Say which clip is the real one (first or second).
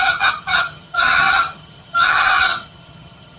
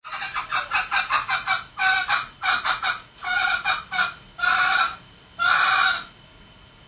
second